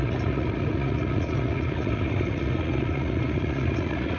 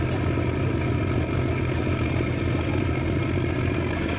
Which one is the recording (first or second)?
second